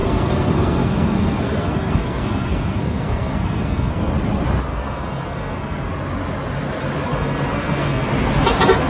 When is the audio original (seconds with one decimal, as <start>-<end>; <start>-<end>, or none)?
4.1-4.7; 5.9-7.1; 8.1-8.9